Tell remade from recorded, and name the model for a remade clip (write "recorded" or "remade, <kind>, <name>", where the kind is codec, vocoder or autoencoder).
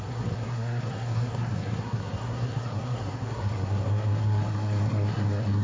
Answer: remade, codec, SNAC